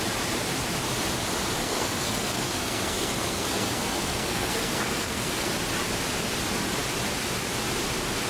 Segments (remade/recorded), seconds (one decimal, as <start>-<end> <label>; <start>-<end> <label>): 0.0-1.6 recorded; 1.6-5.5 remade; 5.5-8.3 recorded